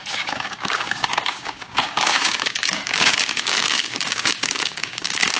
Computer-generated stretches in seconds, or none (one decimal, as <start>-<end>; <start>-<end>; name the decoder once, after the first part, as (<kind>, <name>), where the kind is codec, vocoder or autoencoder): 0.0-5.4 (codec, DAC)

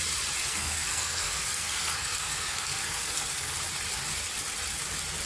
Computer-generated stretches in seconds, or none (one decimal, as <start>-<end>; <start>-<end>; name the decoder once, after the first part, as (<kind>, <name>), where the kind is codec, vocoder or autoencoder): 0.4-3.6 (codec, SNAC)

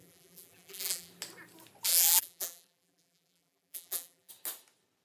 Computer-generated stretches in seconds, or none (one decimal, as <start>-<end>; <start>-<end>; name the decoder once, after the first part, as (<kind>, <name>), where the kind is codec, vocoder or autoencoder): 0.0-1.1 (vocoder, BigVGAN v2); 1.9-4.3